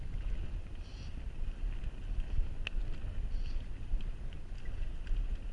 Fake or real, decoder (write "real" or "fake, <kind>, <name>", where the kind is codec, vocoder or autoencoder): real